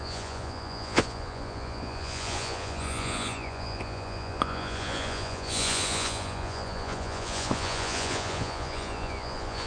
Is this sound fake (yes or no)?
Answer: yes